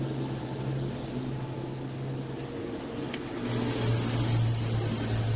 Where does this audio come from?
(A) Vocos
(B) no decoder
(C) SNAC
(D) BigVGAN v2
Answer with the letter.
B